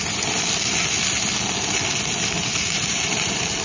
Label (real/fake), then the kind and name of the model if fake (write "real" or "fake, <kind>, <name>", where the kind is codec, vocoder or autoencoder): real